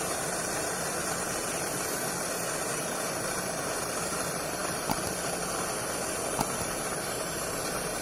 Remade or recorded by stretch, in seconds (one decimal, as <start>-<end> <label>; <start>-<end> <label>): 0.0-8.0 remade